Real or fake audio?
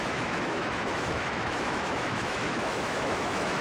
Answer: fake